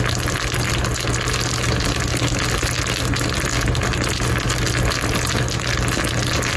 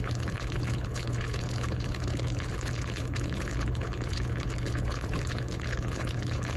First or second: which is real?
first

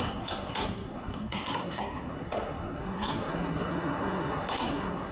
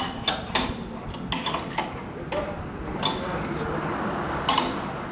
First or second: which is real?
second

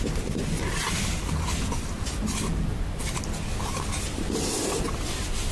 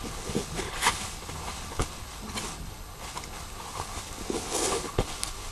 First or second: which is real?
first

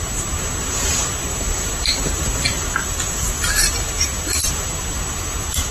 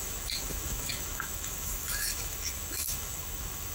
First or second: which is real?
first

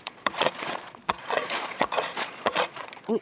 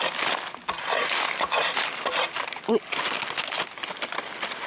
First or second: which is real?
second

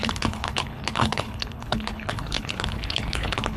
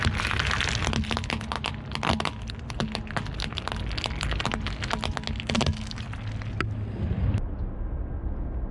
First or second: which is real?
second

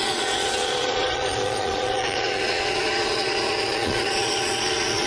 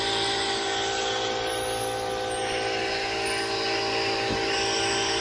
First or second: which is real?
second